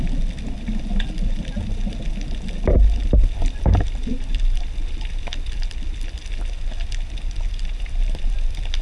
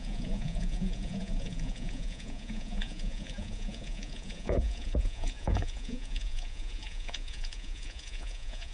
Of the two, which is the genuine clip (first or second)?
first